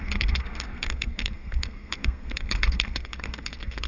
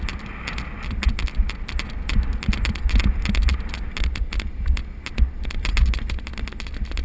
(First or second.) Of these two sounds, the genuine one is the second